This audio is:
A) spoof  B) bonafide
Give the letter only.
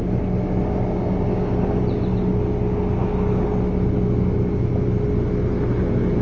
B